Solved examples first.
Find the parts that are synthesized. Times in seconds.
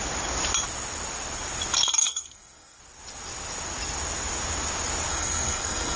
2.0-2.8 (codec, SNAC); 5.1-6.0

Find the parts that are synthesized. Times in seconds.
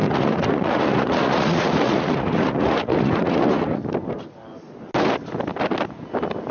0.0-3.9 (vocoder, Vocos)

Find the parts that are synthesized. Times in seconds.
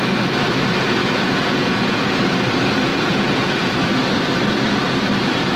1.0-2.1 (vocoder, Vocos); 2.9-3.8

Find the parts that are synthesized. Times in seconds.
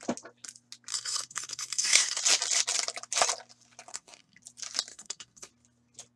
0.9-2.2 (codec, SNAC); 3.9-4.4; 4.9-5.5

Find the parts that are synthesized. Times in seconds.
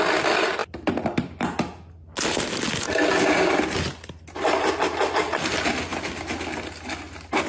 0.0-0.6 (vocoder, BigVGAN v2); 5.1-5.9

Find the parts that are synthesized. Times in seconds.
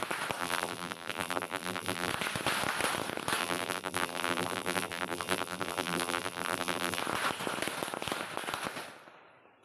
0.4-2.1 (vocoder, BigVGAN v2); 3.4-7.0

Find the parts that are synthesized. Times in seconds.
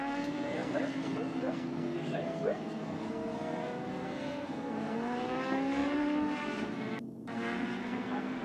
0.0-8.4 (codec, SNAC)